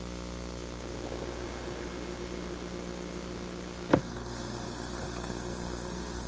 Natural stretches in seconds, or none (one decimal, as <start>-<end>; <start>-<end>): 0.0-4.0